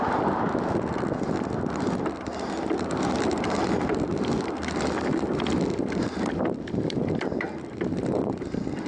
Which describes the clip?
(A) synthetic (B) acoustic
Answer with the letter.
A